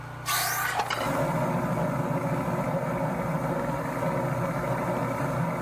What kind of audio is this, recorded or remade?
recorded